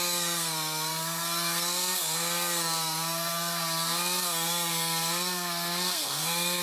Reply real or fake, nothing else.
fake